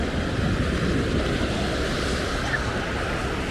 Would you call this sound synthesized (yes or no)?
no